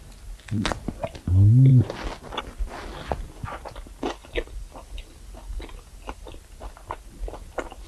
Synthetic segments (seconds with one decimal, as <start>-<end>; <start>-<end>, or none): 4.2-6.3